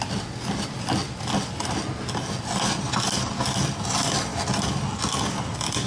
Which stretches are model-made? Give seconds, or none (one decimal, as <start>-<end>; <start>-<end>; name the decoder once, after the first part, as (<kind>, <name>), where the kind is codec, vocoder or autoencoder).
none

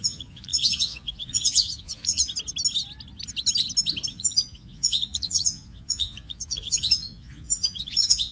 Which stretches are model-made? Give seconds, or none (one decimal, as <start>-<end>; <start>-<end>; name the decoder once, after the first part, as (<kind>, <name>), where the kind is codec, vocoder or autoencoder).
0.0-2.2 (vocoder, Vocos); 4.1-8.3

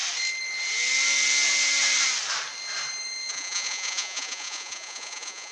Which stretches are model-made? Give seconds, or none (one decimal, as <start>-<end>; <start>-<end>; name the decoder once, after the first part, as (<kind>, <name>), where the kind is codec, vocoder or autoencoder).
3.3-5.5 (vocoder, Vocos)

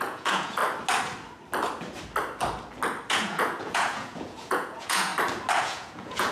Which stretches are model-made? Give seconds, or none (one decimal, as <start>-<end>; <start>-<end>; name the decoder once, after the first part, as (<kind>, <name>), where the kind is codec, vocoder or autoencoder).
0.0-0.6 (vocoder, Vocos); 3.1-5.1; 5.6-6.3

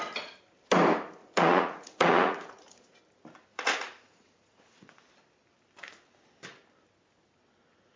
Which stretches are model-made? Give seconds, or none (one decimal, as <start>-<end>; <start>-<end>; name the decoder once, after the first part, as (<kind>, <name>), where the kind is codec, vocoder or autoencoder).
1.2-3.0 (vocoder, Vocos); 3.5-4.9

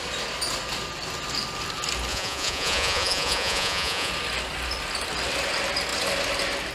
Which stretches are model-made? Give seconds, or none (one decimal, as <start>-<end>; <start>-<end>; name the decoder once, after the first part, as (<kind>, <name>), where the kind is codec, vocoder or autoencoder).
2.1-4.1 (vocoder, Vocos)

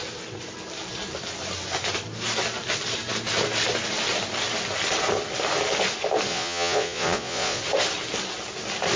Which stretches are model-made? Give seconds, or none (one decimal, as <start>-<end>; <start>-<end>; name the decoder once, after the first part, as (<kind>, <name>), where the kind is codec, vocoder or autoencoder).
6.3-7.6 (vocoder, Vocos)